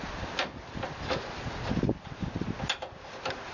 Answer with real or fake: real